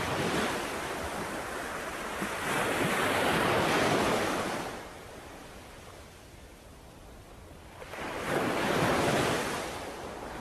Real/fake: real